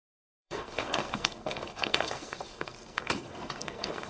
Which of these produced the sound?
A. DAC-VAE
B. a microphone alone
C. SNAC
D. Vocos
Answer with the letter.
C